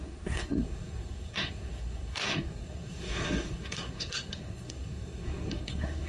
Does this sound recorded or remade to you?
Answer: remade